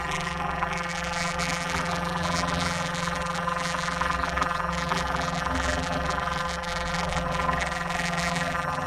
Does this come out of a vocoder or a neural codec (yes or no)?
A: yes